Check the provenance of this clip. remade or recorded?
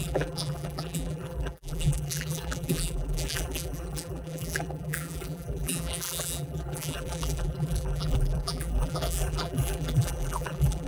remade